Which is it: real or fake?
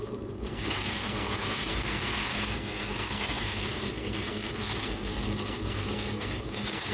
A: fake